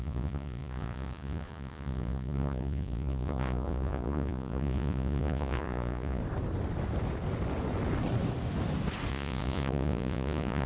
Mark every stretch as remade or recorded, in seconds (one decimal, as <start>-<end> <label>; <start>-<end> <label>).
0.0-6.2 remade; 6.2-9.1 recorded; 9.1-10.7 remade